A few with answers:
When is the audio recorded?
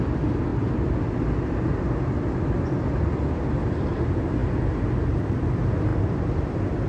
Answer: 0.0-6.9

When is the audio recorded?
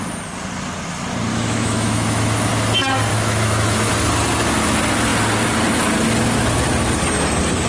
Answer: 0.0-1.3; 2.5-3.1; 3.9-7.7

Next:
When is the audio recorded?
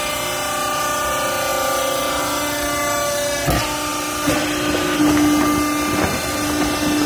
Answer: 0.0-7.1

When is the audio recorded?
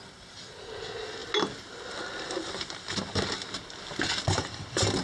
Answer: 0.0-5.0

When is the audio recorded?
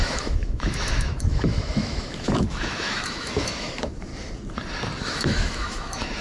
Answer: 4.1-5.0